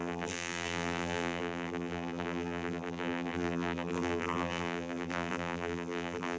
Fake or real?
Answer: fake